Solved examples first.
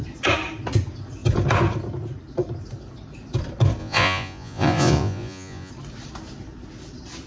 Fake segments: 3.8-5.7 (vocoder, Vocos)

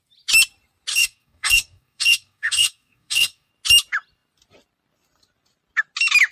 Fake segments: 0.9-3.5 (codec, DAC)